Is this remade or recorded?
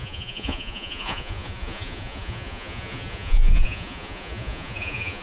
remade